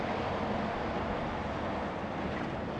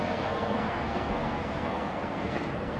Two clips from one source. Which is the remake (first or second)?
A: second